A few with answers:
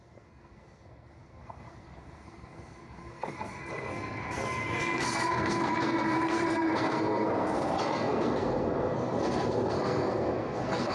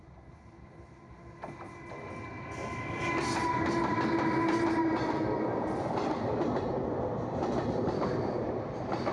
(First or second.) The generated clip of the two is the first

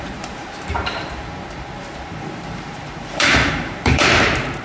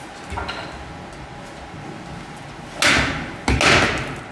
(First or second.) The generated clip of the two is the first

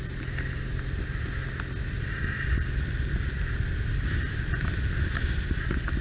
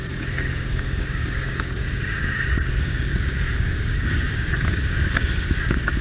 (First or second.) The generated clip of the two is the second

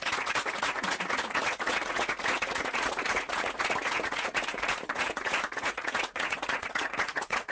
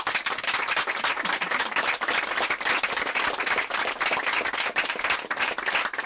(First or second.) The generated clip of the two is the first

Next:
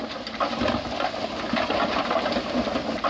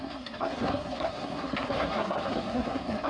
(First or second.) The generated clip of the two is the second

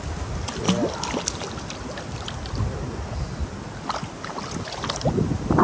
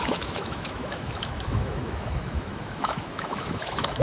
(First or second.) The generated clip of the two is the second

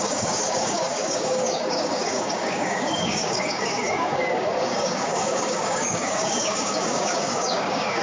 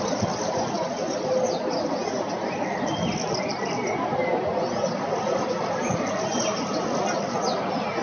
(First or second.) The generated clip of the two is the first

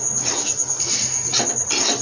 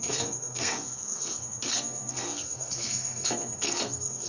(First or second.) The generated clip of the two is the second